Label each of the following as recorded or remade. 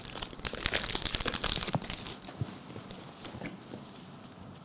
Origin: recorded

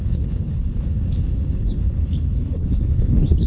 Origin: remade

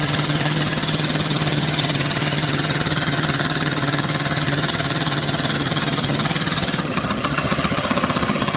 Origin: remade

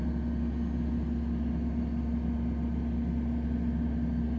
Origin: recorded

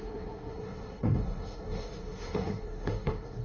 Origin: remade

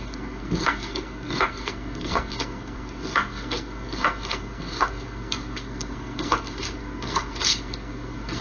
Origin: remade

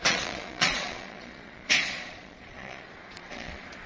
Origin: remade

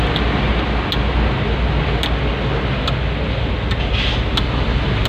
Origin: recorded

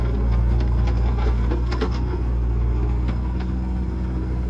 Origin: remade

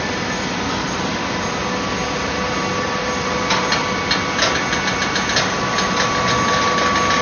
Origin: recorded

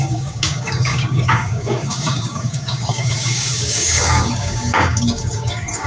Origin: remade